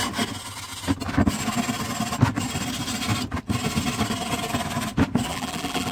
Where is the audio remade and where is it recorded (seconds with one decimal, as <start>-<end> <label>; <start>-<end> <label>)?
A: 0.0-5.3 recorded; 5.3-5.9 remade